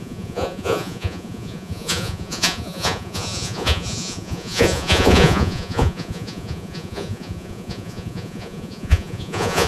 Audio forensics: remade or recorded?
remade